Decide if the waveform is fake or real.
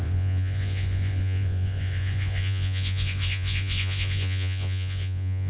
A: fake